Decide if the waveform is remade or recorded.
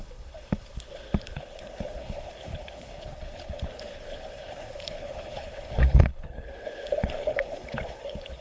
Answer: remade